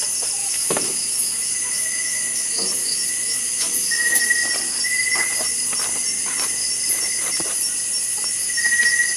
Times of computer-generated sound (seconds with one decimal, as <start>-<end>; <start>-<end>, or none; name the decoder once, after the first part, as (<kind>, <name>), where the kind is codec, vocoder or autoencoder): 0.4-4.2 (autoencoder, DAC-VAE)